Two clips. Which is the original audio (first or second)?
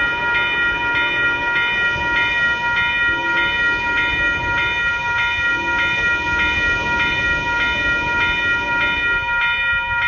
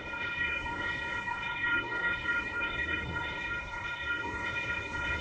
first